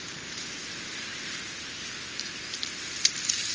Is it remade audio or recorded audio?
remade